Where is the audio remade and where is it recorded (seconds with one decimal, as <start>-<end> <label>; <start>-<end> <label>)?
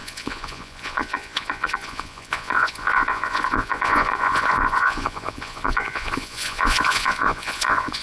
0.0-8.0 remade